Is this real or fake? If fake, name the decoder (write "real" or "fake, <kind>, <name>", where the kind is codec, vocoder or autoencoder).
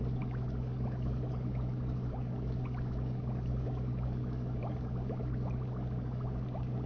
fake, codec, DAC